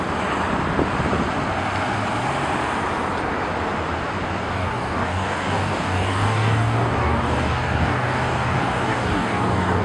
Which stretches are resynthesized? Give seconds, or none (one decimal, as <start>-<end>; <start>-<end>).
4.4-9.8